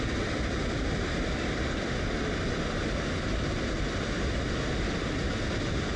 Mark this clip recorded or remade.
recorded